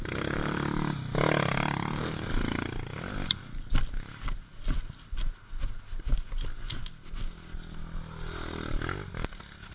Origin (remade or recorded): recorded